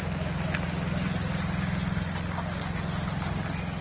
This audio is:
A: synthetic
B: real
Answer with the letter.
B